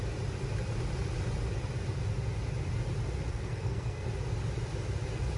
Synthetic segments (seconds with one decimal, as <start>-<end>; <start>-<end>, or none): 3.3-4.1